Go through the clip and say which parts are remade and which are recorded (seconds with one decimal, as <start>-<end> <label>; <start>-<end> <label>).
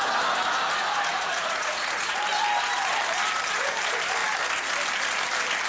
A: 0.0-1.1 recorded; 1.1-2.2 remade; 2.2-5.7 recorded